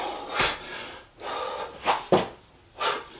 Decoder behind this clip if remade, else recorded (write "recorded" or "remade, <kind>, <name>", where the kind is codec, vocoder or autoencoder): recorded